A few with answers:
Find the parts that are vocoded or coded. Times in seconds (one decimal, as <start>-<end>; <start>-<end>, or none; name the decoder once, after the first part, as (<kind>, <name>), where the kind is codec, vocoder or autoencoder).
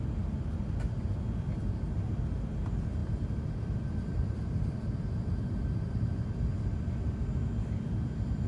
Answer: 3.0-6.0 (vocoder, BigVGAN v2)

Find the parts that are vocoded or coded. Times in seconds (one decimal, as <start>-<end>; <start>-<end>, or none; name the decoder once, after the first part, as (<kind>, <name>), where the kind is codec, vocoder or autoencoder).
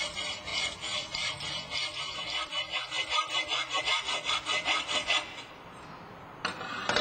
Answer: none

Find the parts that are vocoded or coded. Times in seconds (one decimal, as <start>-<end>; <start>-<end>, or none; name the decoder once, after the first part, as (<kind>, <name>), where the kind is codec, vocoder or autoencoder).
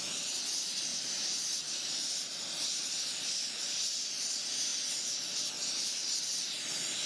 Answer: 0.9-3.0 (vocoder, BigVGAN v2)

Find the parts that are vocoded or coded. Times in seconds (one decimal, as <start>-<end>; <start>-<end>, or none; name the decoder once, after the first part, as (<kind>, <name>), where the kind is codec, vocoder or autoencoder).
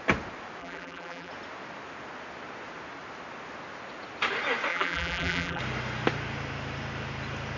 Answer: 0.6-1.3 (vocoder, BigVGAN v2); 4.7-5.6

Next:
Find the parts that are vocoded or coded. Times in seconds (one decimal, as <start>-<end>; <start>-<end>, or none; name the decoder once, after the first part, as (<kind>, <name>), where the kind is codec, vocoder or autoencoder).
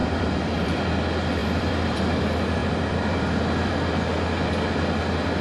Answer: 0.0-0.8 (vocoder, BigVGAN v2); 1.4-2.0; 2.6-4.0